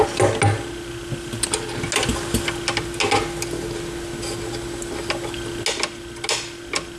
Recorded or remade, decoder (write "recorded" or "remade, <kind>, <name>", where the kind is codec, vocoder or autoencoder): recorded